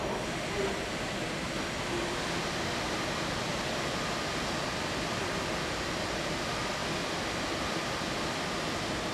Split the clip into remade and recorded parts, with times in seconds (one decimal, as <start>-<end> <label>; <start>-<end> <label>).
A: 0.0-9.1 recorded